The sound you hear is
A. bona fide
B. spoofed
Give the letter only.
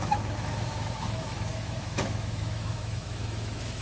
B